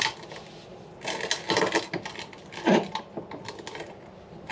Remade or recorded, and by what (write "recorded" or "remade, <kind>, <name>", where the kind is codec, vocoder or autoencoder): recorded